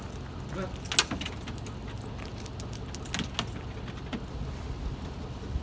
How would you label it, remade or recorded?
recorded